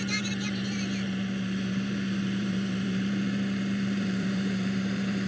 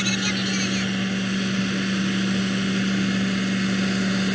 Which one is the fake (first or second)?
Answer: first